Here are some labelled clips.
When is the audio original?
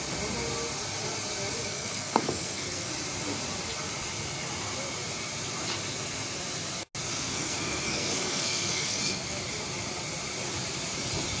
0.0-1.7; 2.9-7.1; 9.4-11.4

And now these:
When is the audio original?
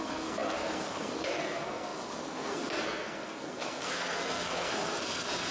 none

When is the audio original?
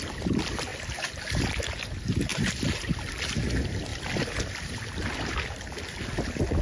0.0-6.6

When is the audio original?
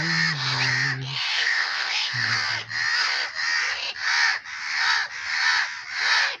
0.0-1.3; 2.3-6.4